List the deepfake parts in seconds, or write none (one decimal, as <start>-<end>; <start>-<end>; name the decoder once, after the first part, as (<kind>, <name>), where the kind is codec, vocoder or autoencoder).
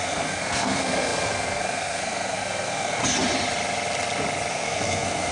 0.0-3.0 (codec, SNAC); 4.5-5.3